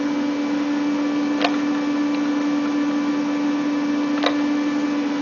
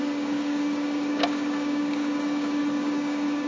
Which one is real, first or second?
first